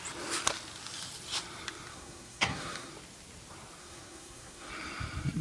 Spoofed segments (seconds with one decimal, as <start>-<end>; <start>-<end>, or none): 1.9-2.9; 3.8-4.7